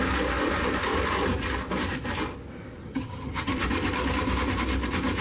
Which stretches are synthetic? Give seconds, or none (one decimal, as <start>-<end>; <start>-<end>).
2.8-3.5